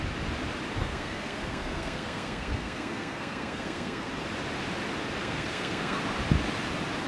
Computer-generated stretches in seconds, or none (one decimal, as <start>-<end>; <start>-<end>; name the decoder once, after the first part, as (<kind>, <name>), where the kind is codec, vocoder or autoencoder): 0.8-4.1 (codec, SNAC); 5.2-6.0